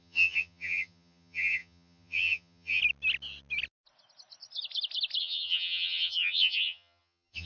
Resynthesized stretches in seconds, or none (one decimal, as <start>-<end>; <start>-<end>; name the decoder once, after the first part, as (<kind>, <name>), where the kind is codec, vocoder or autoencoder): 0.0-2.8 (vocoder, HiFi-GAN); 5.2-7.5

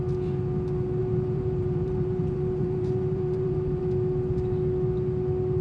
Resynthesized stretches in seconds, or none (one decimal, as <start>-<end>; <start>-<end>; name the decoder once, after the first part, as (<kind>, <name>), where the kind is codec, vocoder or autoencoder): 1.0-3.8 (vocoder, BigVGAN v2)

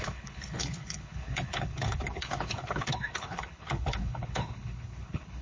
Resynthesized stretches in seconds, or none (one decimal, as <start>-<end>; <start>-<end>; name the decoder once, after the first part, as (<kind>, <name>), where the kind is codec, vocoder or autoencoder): 0.0-5.4 (codec, HILCodec)

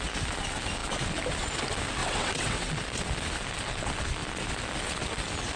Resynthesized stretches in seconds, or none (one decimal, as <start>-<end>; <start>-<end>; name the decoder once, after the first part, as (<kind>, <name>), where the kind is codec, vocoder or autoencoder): 2.0-2.7 (vocoder, WaveNeXt)

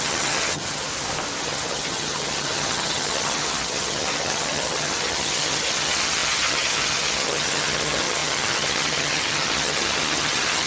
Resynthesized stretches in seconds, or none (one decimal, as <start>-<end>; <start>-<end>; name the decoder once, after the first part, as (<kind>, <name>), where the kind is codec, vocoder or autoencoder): 0.0-0.9 (vocoder, HiFi-GAN); 1.4-10.7

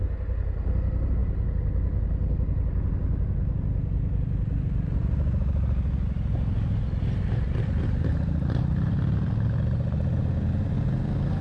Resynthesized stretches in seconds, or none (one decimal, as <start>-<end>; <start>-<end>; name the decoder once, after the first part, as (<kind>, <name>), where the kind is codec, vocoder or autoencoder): none

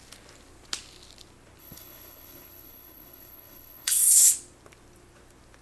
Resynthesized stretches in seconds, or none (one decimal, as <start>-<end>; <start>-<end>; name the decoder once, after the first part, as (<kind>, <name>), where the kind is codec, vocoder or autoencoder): 1.6-4.3 (codec, HILCodec)

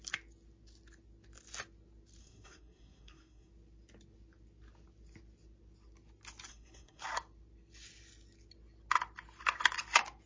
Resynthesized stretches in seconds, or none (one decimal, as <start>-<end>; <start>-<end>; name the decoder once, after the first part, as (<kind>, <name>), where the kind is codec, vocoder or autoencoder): 2.2-3.5 (codec, SNAC); 6.5-7.0